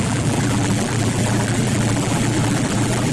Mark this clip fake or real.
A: fake